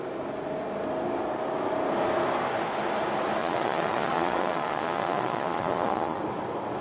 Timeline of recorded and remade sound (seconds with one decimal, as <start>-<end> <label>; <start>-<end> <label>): 0.0-3.4 recorded; 3.4-6.2 remade; 6.2-6.8 recorded